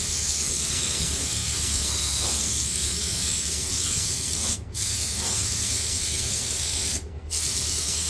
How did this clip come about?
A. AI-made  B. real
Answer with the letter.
A